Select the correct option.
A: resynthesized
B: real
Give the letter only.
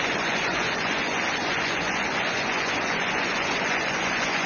A